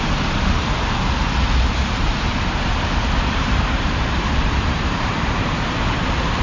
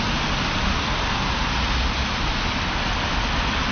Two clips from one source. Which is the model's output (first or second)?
first